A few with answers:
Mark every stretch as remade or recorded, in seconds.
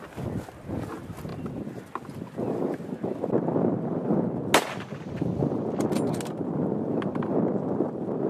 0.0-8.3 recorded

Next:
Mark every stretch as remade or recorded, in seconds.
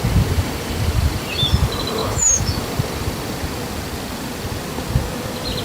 0.0-2.0 recorded; 2.0-2.6 remade; 2.6-5.6 recorded